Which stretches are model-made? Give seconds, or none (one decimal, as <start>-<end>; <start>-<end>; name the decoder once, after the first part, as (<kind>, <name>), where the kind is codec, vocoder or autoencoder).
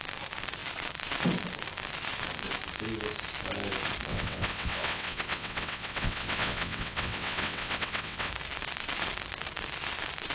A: 4.1-8.3 (vocoder, WaveNeXt)